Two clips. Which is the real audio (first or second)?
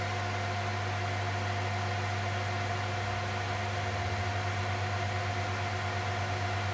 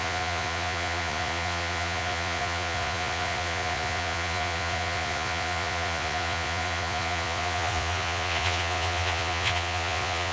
first